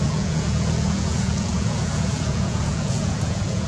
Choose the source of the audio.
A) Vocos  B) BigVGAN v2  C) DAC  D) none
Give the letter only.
A